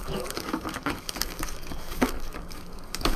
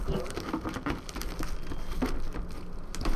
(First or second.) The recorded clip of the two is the second